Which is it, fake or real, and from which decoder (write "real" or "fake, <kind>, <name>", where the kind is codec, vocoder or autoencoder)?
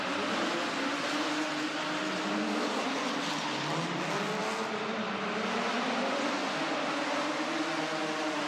real